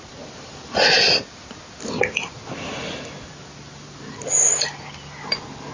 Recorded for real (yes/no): yes